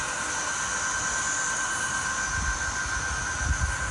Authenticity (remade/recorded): recorded